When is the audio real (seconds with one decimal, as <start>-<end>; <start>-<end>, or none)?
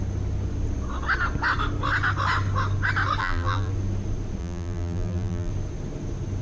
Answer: 0.0-3.2; 3.7-4.4; 5.5-6.4